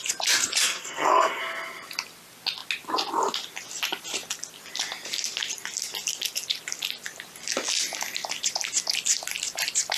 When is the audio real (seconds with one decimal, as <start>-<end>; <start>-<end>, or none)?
0.0-0.6; 1.4-10.0

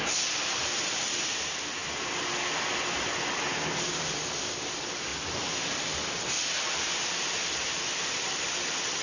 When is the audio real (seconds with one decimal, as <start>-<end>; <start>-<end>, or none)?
0.0-9.0